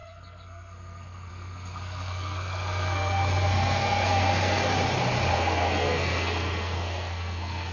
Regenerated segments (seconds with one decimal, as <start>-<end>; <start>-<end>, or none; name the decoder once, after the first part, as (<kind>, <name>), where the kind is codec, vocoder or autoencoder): 0.0-4.6 (codec, SNAC); 5.3-7.7

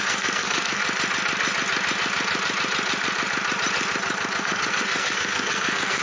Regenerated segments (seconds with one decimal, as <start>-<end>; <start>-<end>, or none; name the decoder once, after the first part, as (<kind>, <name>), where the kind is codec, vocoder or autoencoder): 0.0-0.8 (codec, SNAC); 4.4-6.0

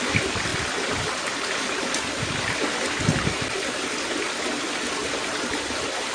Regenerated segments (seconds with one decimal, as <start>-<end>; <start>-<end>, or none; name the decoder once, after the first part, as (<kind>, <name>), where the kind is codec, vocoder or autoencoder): none

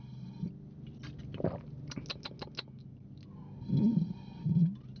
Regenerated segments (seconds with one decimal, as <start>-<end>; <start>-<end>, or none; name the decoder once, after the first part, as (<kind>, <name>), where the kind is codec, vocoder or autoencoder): none

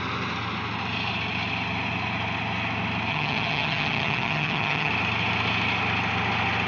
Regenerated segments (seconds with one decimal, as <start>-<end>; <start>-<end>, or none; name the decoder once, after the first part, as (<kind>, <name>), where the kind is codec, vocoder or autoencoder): 3.1-4.9 (vocoder, HiFi-GAN)

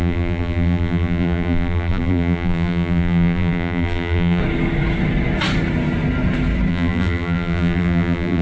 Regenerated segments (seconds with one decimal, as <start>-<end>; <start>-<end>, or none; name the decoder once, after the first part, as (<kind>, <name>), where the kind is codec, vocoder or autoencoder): 0.0-4.4 (vocoder, BigVGAN v2); 6.7-8.4

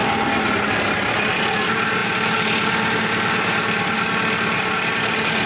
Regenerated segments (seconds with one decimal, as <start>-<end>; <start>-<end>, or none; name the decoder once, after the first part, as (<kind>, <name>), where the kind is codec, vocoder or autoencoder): none